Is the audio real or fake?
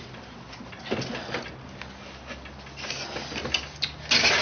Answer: real